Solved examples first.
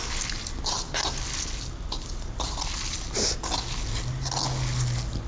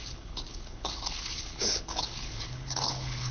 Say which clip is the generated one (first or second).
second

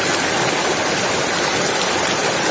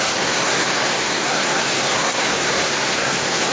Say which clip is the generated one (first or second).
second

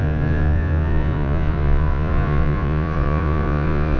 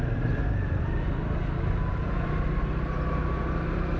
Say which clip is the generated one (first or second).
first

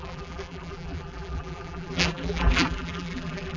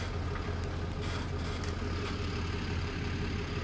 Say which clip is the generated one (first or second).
first